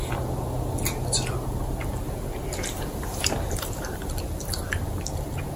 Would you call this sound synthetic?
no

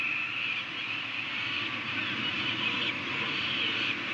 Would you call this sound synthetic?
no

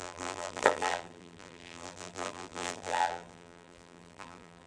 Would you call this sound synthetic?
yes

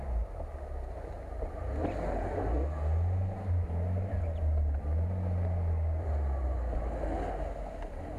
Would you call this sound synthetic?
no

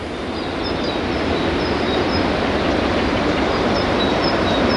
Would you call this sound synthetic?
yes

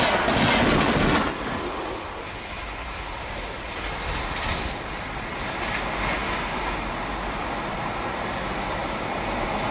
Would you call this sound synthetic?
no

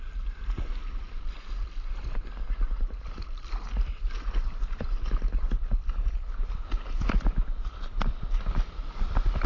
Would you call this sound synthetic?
yes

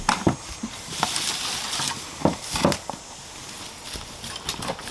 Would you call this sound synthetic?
no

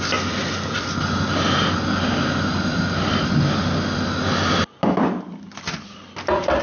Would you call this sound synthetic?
no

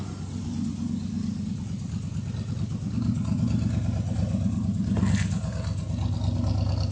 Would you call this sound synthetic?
no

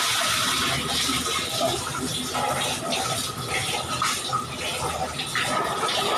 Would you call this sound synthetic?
no